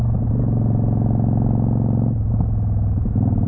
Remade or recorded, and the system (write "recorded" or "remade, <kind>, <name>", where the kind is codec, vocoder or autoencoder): recorded